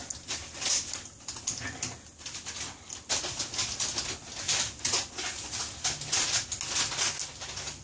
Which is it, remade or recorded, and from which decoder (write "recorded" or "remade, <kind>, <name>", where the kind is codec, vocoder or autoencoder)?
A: recorded